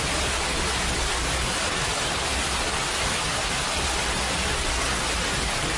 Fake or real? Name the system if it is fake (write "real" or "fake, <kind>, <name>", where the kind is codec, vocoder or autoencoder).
real